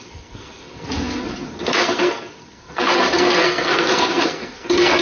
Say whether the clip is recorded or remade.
remade